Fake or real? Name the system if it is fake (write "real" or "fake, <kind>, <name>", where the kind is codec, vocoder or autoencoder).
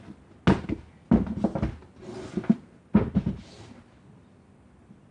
real